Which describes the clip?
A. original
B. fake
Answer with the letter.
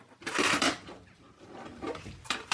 B